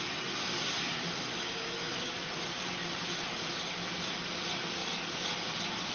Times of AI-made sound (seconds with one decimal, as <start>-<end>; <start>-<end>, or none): 1.3-2.1